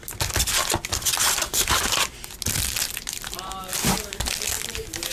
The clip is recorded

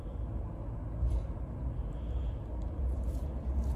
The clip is recorded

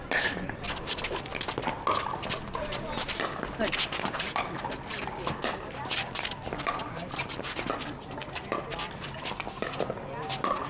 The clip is recorded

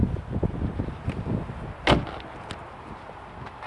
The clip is recorded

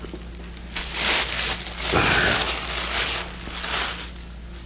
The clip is recorded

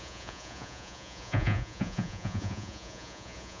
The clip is remade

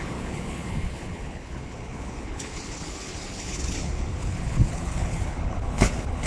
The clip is remade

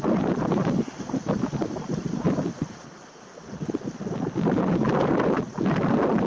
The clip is recorded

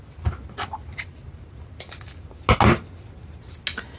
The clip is recorded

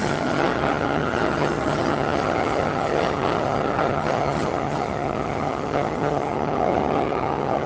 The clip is remade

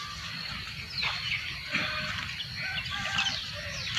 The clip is recorded